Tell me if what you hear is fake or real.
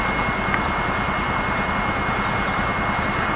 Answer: real